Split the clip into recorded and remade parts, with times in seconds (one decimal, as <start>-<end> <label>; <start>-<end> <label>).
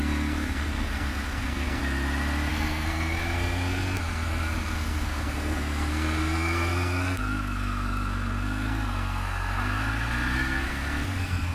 0.0-1.8 remade; 1.8-2.5 recorded; 2.5-11.5 remade